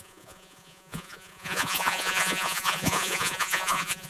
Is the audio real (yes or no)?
no